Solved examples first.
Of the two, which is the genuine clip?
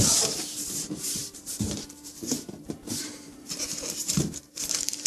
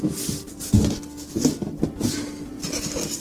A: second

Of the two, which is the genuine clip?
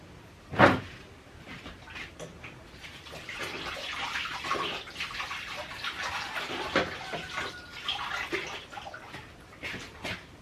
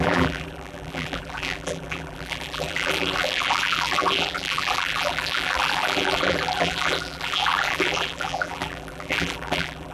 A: first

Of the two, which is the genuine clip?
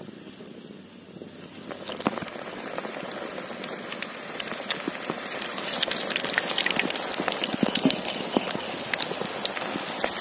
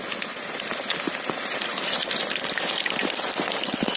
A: first